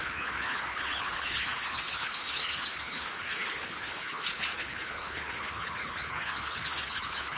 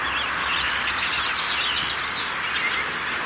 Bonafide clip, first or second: second